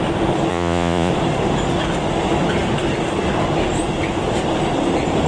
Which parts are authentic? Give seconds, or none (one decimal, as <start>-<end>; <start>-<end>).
0.0-0.5; 1.1-5.3